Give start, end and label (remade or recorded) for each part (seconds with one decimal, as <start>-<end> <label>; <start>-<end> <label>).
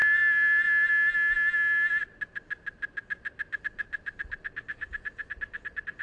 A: 0.0-4.7 recorded; 4.7-5.3 remade; 5.3-6.0 recorded